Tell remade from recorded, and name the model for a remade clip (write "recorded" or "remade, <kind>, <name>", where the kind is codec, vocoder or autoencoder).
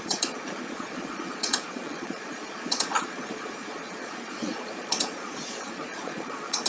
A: remade, vocoder, Vocos